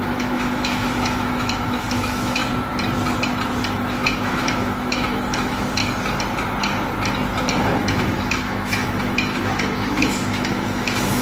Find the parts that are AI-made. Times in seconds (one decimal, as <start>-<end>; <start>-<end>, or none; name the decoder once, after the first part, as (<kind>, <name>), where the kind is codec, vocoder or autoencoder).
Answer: 0.0-2.4 (autoencoder, DAC-VAE); 3.8-5.8; 7.6-11.2